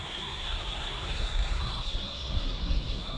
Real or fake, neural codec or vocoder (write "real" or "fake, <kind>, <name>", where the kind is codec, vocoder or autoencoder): fake, codec, SNAC